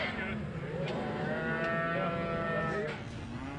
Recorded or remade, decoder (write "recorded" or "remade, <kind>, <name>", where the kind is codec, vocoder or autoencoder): recorded